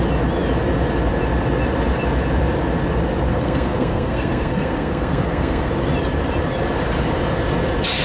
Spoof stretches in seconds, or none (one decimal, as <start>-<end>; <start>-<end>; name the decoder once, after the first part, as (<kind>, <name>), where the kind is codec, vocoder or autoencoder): 3.3-5.7 (codec, SNAC)